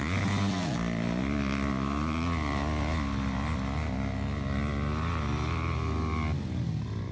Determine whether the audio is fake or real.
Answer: real